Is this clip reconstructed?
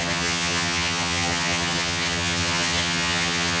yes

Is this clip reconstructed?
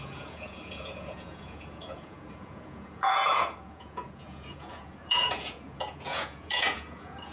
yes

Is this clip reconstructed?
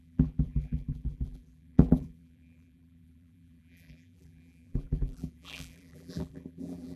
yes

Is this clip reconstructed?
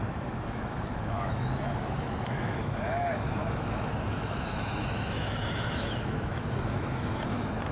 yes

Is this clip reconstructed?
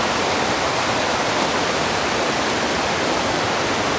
no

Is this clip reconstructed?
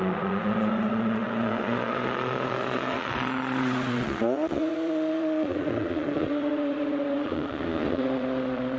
yes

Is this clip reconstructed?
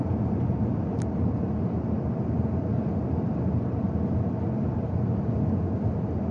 yes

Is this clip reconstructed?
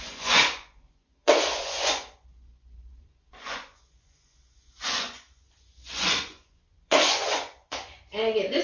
yes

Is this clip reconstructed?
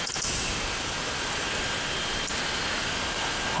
no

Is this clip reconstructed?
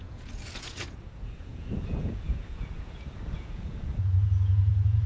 yes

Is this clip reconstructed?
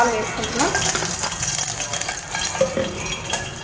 no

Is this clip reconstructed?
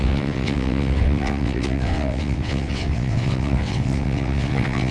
yes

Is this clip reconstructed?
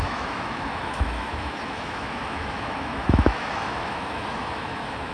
yes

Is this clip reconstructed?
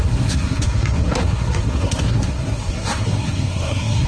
yes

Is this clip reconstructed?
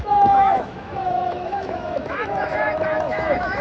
yes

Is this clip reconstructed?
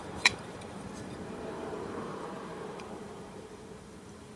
yes